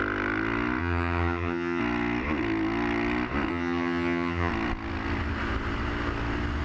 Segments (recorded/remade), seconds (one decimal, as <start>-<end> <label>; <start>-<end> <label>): 0.0-0.8 recorded; 0.8-1.8 remade; 1.8-3.5 recorded; 3.5-4.5 remade; 4.5-6.6 recorded